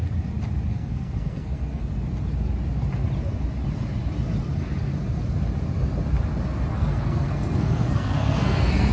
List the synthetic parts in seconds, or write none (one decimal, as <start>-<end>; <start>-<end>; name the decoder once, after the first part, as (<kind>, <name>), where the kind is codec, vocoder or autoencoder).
0.7-1.8 (codec, SNAC); 6.7-8.9